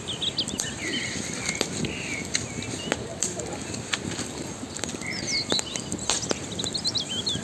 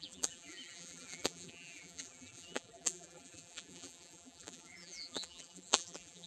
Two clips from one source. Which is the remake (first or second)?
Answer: second